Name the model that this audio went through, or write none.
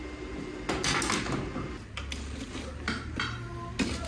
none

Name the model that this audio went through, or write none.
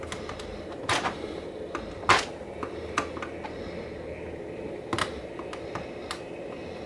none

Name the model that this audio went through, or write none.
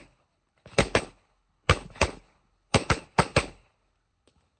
codec, HILCodec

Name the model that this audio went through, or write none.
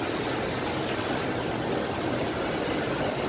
none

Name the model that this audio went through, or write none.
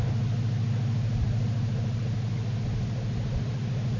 none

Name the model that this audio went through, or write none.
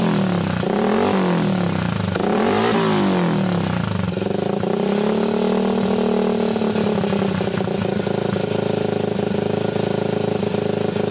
none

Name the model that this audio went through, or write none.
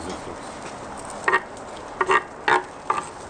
none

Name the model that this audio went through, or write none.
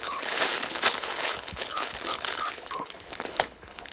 codec, HILCodec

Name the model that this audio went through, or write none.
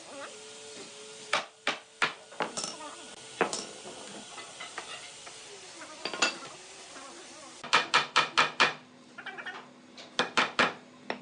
none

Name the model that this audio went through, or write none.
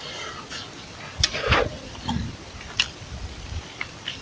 none